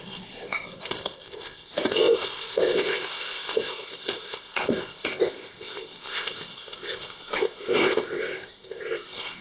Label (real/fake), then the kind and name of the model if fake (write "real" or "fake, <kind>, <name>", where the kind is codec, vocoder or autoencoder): fake, codec, ZipCodec